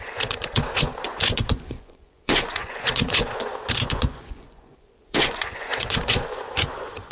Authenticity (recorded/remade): remade